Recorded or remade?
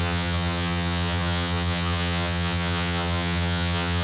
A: remade